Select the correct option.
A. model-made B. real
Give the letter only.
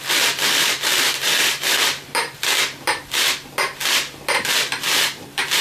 A